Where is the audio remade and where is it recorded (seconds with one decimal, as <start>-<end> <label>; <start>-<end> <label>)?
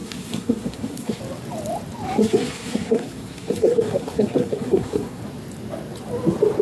0.0-1.2 remade; 1.2-2.2 recorded; 2.2-5.2 remade; 5.2-6.6 recorded